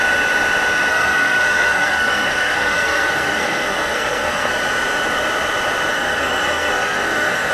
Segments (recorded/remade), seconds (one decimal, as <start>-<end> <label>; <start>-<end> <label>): 0.0-0.9 recorded; 0.9-4.5 remade; 4.5-5.9 recorded; 5.9-7.5 remade